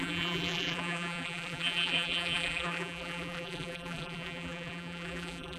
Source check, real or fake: fake